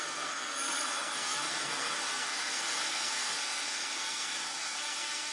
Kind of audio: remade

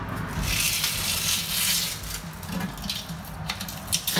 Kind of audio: recorded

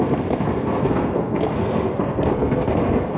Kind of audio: remade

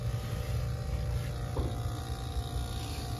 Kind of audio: recorded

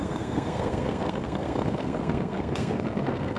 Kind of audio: remade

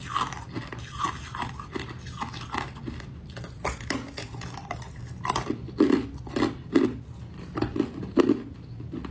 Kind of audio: recorded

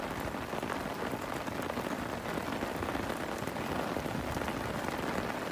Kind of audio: recorded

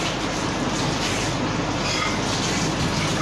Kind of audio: recorded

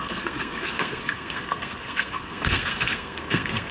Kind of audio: remade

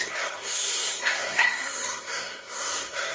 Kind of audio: remade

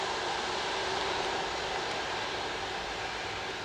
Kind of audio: recorded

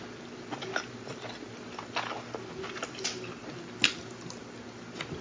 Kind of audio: recorded